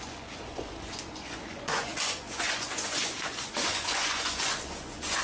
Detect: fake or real fake